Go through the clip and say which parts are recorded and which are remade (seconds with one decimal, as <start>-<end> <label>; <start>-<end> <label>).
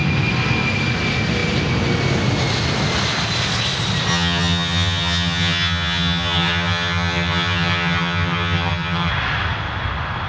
0.0-4.1 recorded; 4.1-9.1 remade; 9.1-10.3 recorded